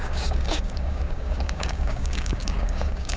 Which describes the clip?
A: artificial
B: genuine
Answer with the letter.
A